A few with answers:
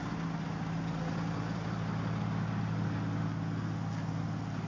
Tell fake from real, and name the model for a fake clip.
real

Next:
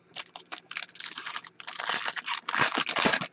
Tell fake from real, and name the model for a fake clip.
real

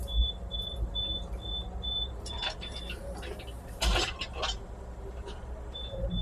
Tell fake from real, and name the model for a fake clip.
real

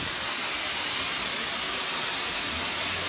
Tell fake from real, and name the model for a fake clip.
real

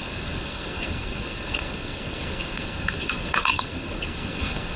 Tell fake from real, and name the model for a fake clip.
fake, codec, SNAC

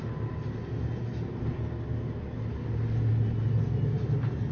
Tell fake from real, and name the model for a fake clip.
real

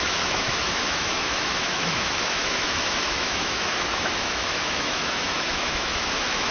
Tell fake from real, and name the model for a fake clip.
fake, autoencoder, DAC-VAE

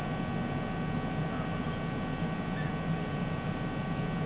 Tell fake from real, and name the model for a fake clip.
real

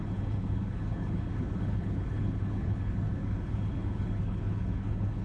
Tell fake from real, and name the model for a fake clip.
fake, codec, HILCodec